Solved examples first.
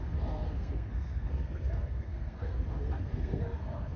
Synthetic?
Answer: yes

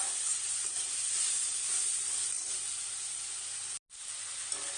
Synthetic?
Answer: no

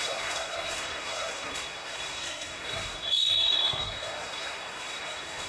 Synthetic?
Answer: yes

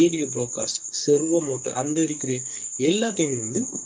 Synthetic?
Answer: yes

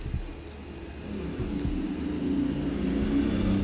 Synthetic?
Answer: no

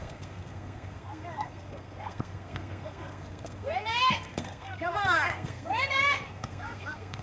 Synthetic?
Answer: yes